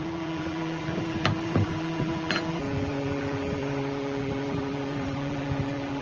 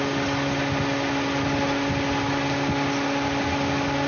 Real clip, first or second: second